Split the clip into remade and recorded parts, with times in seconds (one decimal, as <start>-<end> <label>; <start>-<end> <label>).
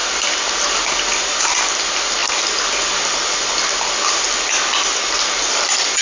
0.0-6.0 recorded